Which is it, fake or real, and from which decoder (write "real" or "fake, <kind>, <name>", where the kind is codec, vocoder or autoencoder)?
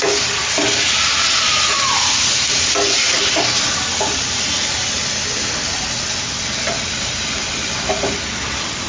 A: real